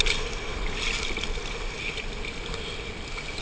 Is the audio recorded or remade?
recorded